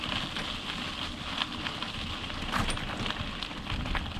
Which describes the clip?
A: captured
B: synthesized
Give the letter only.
A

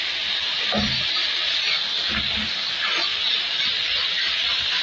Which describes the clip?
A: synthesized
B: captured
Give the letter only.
B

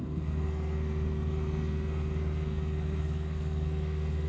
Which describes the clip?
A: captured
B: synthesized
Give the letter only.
B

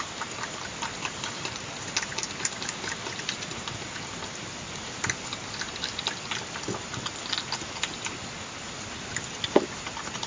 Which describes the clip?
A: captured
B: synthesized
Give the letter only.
A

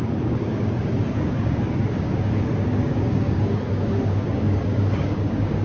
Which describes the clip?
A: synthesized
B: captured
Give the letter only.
A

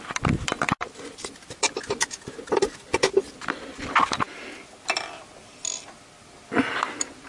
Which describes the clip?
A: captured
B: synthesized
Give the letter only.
A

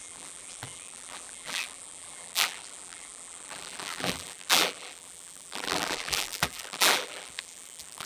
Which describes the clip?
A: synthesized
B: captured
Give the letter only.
A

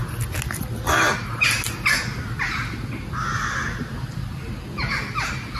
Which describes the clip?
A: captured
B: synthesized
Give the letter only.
A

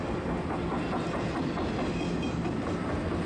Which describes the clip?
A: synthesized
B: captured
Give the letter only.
B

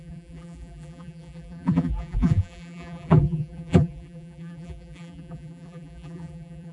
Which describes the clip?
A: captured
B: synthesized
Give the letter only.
B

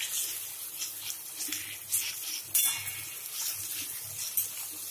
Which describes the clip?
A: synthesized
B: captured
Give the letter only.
B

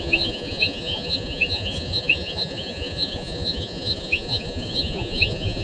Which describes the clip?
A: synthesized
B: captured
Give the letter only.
A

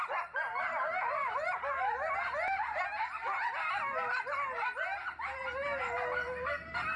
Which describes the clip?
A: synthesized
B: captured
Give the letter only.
B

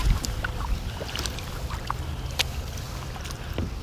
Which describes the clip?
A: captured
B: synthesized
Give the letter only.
A